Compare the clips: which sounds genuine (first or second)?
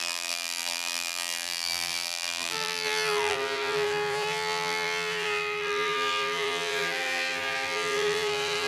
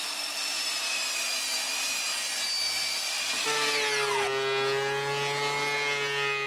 second